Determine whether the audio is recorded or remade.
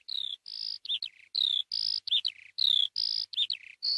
recorded